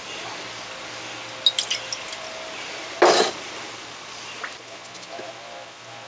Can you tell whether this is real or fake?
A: real